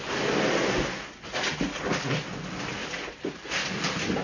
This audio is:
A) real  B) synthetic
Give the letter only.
A